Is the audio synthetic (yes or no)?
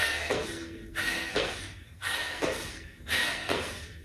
yes